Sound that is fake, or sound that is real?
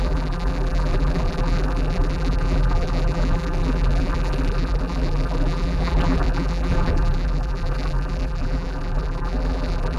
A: fake